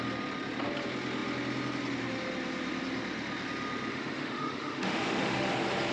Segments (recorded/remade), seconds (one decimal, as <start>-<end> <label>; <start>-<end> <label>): 0.0-3.9 recorded; 3.9-5.5 remade; 5.5-5.9 recorded